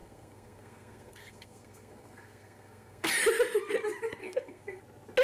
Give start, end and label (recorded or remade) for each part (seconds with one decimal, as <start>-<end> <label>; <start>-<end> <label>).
0.0-3.1 remade; 3.1-4.2 recorded; 4.2-4.8 remade; 4.8-5.2 recorded